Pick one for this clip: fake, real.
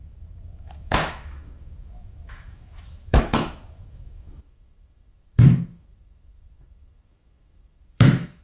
fake